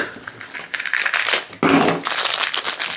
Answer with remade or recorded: recorded